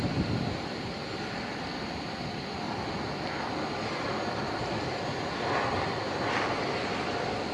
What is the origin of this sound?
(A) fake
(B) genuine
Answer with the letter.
B